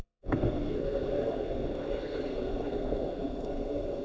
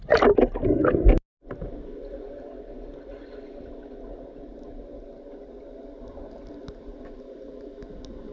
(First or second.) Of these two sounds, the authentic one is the second